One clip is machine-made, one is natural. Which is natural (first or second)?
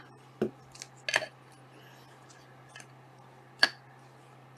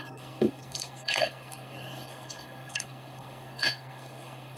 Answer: first